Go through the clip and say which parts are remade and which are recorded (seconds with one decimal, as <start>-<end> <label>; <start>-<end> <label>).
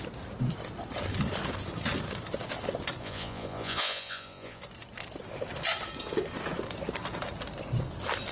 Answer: 0.0-3.0 recorded; 3.0-4.6 remade; 4.6-8.3 recorded